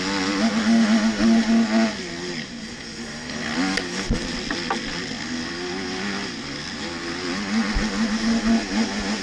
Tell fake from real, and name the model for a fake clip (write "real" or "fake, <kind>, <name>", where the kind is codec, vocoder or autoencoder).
real